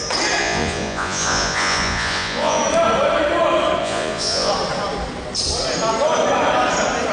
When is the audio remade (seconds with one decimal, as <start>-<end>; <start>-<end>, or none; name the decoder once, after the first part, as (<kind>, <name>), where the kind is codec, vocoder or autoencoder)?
0.4-2.6 (vocoder, Vocos); 3.8-4.5